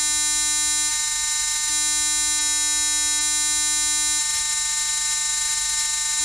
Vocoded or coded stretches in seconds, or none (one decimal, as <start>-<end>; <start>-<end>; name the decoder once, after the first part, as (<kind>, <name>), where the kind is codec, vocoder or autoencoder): 0.9-1.7 (autoencoder, DAC-VAE); 4.2-6.2